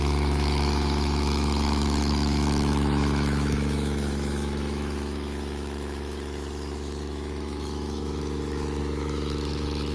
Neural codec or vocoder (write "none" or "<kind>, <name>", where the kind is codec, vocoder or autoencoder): autoencoder, DAC-VAE